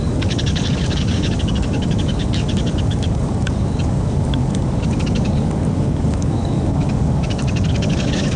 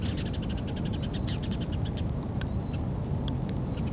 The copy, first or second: first